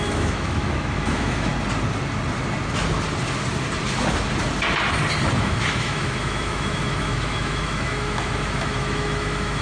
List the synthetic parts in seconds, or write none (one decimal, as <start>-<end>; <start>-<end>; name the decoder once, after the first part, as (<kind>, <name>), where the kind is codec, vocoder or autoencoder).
0.0-1.5 (autoencoder, DAC-VAE); 5.4-9.6